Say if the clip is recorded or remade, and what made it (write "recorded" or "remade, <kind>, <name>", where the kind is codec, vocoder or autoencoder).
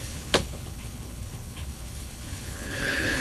remade, codec, HILCodec